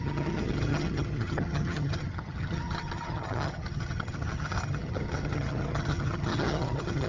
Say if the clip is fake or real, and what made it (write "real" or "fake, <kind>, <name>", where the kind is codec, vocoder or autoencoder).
fake, vocoder, HiFi-GAN